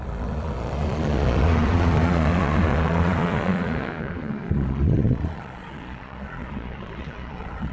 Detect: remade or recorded remade